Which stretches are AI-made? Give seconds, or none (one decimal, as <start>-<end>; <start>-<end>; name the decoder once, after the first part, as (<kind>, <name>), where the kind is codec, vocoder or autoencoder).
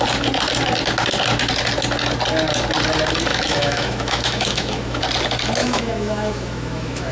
3.3-5.0 (autoencoder, DAC-VAE); 5.6-7.1